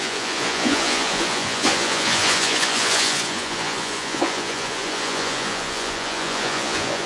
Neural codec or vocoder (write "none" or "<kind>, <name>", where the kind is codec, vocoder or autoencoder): vocoder, Vocos